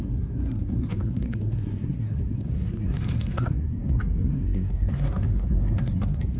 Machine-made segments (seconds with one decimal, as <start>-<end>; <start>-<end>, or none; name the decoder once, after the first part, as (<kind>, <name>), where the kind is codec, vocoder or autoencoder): 0.0-6.4 (codec, SNAC)